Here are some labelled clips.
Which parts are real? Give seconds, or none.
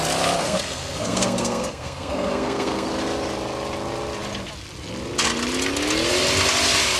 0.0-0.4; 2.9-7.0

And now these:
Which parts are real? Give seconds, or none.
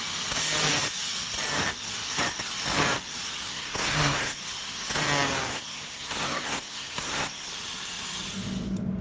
0.0-3.5; 4.4-5.5; 7.5-9.0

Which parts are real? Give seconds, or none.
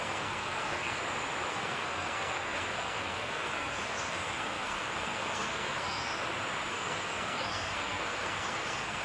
1.0-1.5; 6.1-6.7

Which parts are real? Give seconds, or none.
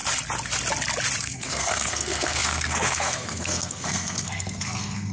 0.0-1.2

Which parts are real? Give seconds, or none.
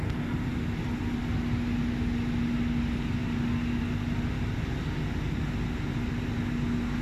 0.0-7.0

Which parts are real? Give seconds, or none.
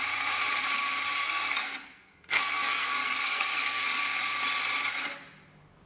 0.0-1.2; 3.8-5.9